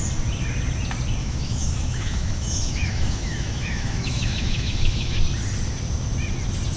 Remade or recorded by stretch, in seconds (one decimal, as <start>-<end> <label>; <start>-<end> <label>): 0.0-1.2 recorded; 1.2-5.2 remade; 5.2-6.8 recorded